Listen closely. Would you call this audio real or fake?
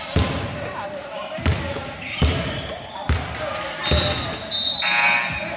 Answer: real